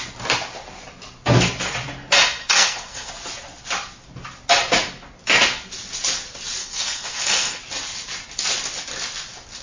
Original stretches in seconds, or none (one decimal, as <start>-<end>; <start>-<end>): 0.0-2.4; 3.1-6.6; 7.6-9.6